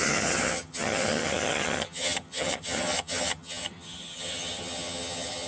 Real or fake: fake